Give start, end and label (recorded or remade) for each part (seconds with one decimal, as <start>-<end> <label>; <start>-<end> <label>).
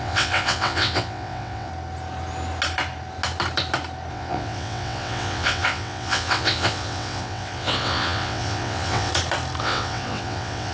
0.0-1.7 remade; 1.7-4.1 recorded; 4.1-9.1 remade; 9.1-9.6 recorded; 9.6-10.7 remade